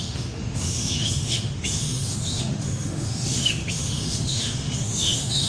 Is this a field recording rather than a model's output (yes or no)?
no